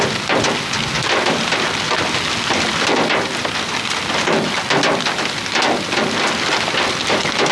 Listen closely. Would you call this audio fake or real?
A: real